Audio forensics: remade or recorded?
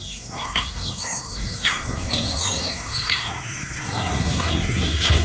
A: remade